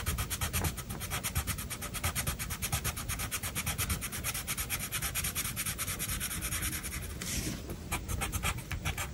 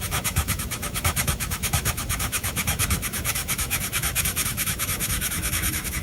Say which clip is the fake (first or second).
second